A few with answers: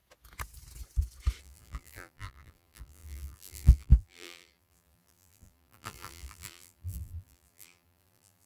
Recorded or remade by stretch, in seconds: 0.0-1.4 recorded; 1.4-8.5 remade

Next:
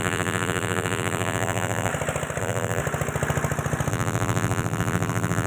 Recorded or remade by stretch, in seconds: 0.0-1.9 remade; 1.9-2.4 recorded; 2.4-2.8 remade; 2.8-3.9 recorded; 3.9-5.5 remade

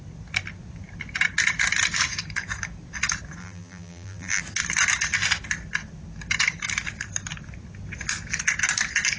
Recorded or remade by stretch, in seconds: 0.0-3.4 recorded; 3.4-4.4 remade; 4.4-9.2 recorded

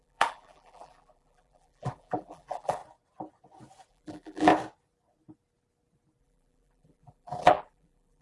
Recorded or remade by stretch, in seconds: 0.0-2.8 remade; 2.8-3.9 recorded; 3.9-4.5 remade; 4.5-6.2 recorded; 6.2-8.2 remade